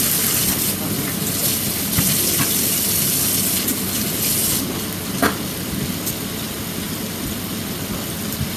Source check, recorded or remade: recorded